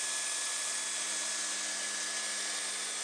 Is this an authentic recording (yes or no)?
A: yes